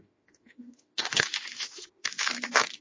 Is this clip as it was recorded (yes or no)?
no